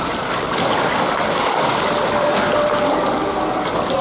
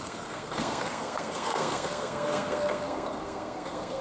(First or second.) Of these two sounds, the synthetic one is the second